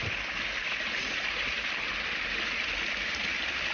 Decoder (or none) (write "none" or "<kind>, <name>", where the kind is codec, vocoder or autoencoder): none